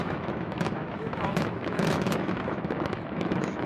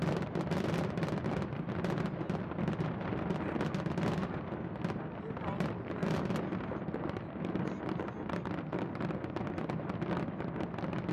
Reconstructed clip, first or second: first